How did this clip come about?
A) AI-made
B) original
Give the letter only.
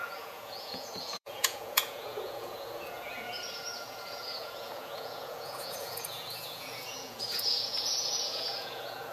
A